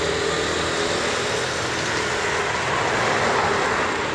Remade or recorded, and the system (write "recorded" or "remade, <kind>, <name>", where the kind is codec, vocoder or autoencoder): recorded